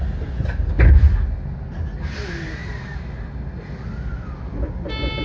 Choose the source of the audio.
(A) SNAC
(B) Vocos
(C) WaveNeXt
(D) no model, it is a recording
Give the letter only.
D